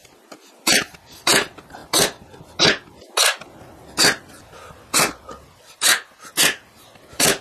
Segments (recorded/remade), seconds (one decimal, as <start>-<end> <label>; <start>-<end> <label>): 0.0-7.4 recorded